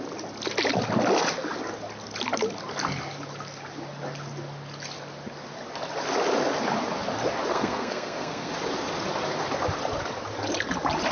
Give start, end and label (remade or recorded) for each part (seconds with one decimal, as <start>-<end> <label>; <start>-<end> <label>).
0.0-7.5 recorded; 7.5-8.5 remade; 8.5-11.1 recorded